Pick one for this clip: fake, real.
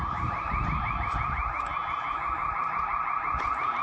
real